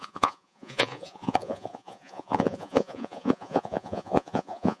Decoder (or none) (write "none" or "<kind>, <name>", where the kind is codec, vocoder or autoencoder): vocoder, Vocos